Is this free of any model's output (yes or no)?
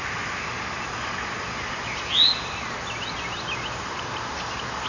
yes